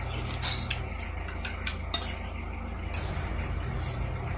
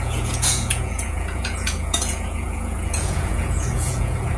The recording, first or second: first